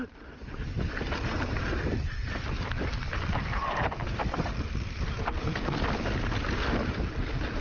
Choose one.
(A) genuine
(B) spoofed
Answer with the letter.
B